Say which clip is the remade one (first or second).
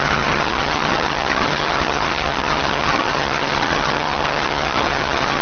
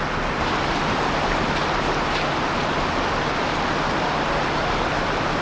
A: first